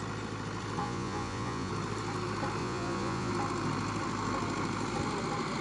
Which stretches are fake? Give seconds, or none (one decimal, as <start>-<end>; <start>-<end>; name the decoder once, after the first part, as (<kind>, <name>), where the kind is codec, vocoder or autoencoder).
0.8-1.7 (vocoder, Vocos); 2.6-3.3